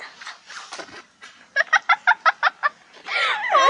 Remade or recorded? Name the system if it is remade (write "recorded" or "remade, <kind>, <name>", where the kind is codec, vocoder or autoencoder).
recorded